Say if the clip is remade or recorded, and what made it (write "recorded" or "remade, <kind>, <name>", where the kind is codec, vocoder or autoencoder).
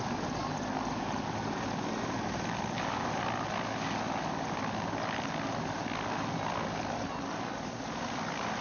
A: recorded